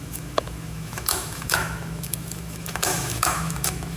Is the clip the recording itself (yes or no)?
no